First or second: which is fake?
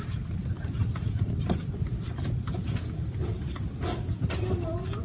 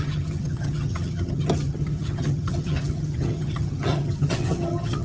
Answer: second